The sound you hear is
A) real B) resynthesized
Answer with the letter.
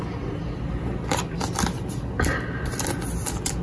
A